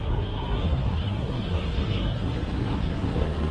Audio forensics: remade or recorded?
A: remade